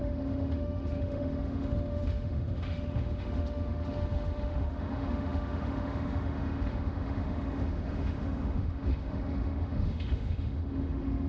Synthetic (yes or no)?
yes